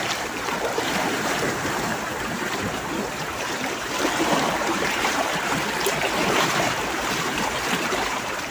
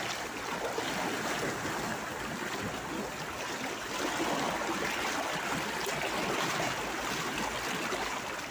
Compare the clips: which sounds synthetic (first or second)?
first